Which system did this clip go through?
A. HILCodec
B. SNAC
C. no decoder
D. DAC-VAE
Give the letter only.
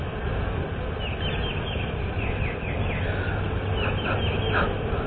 C